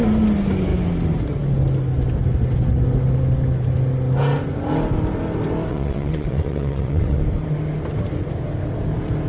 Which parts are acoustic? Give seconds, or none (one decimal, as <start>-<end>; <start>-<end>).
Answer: 0.0-5.7; 7.2-9.3